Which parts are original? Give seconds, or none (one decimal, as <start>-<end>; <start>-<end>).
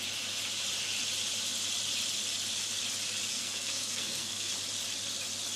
0.0-3.3; 4.5-5.6